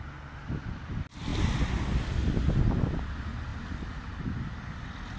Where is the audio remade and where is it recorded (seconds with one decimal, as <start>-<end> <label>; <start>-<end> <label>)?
0.0-5.2 recorded